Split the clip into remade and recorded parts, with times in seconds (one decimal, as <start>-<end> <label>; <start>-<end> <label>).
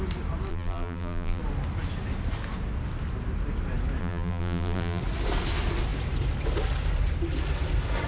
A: 0.0-0.5 recorded; 0.5-1.4 remade; 1.4-4.0 recorded; 4.0-5.0 remade; 5.0-8.1 recorded